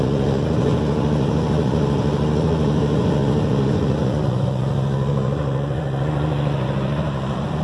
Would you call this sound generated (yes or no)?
yes